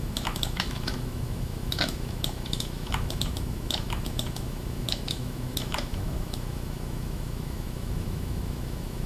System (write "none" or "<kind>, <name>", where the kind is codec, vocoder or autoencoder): autoencoder, DAC-VAE